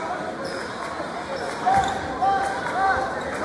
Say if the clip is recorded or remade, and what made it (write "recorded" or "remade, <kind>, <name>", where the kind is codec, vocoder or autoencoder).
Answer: recorded